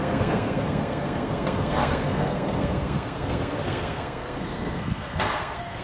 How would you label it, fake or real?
fake